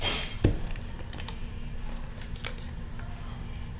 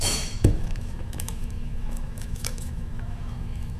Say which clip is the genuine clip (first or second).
first